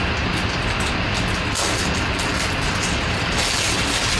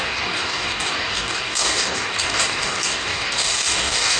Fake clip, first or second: second